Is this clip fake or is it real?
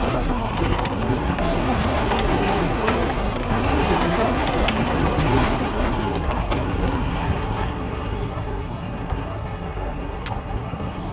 fake